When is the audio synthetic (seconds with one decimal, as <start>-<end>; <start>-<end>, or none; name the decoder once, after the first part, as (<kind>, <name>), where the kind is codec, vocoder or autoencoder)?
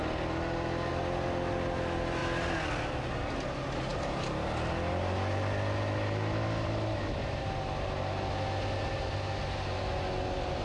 none